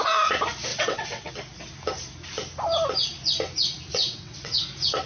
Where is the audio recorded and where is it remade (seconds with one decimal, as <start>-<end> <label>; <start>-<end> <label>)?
0.0-0.7 recorded; 0.7-1.3 remade; 1.3-3.9 recorded; 3.9-4.6 remade; 4.6-5.1 recorded